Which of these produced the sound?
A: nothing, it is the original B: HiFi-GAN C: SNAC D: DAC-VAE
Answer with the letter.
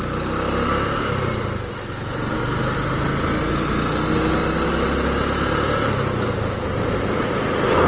A